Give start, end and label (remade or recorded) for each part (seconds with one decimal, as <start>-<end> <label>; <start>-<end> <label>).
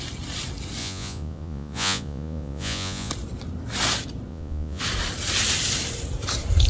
0.0-0.8 recorded; 0.8-3.1 remade; 3.1-4.3 recorded; 4.3-4.8 remade; 4.8-6.7 recorded